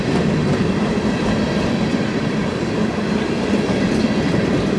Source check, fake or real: real